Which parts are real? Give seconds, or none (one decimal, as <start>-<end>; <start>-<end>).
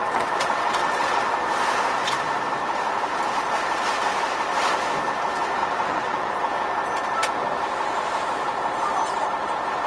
1.2-5.6; 6.3-9.9